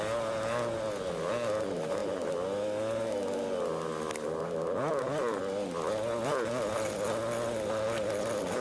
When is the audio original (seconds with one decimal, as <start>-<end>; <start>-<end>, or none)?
0.0-8.6